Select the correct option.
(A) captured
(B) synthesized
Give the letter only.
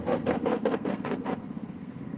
B